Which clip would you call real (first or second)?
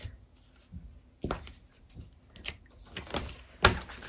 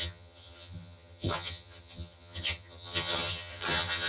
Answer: first